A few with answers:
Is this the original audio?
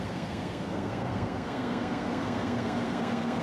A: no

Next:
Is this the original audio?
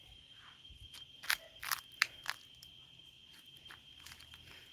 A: yes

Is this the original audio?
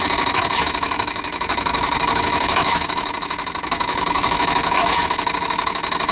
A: no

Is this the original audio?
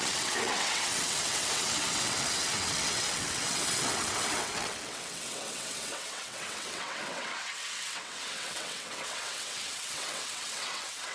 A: no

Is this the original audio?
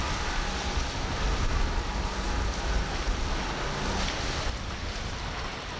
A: yes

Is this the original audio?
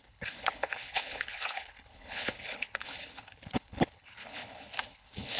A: no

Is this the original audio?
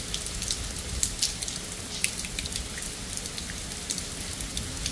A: yes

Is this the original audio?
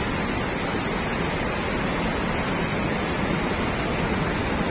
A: yes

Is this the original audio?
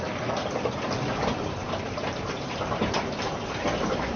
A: yes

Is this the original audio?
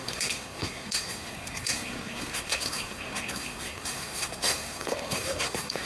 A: no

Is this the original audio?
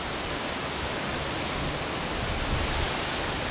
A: yes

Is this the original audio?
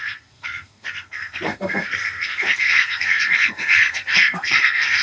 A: no